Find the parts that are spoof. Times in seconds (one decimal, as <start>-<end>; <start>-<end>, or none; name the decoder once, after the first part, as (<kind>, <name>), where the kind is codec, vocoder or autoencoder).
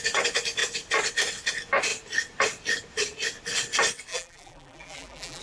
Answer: 4.1-5.4 (vocoder, BigVGAN v2)